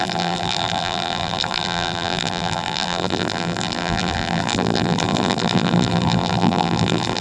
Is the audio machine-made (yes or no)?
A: yes